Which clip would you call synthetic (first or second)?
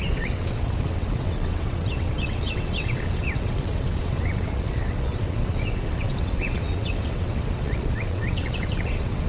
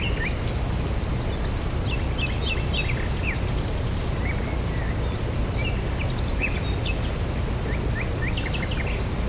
first